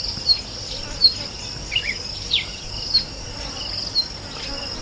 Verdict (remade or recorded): recorded